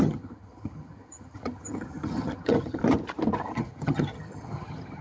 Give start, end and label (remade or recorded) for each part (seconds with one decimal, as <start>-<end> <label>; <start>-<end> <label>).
0.0-2.8 remade; 2.8-3.4 recorded; 3.4-5.0 remade